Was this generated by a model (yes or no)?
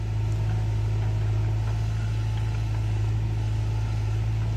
no